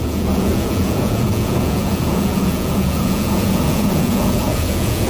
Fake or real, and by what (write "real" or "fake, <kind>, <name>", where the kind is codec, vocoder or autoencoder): fake, vocoder, Vocos